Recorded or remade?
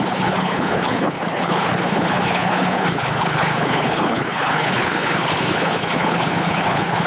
remade